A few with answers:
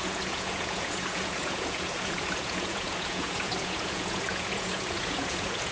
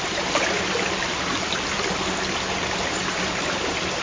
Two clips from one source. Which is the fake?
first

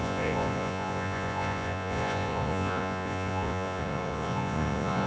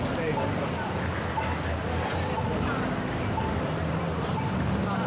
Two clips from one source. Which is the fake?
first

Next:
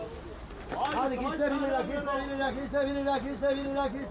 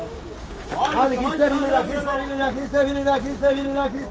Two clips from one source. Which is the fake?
second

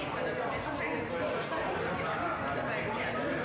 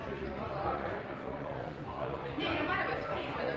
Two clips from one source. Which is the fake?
second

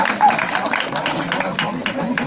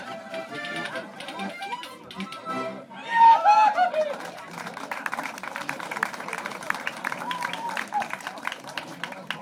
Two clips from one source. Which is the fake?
second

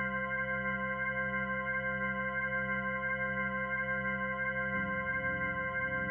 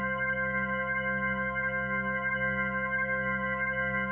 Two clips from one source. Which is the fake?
second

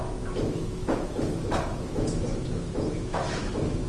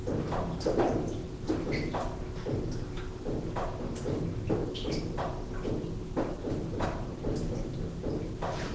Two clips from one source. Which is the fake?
first